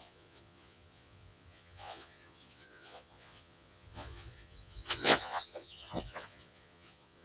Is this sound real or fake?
fake